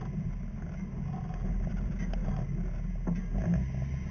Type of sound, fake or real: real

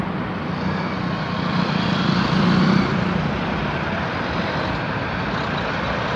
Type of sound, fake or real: real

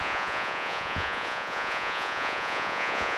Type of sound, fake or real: fake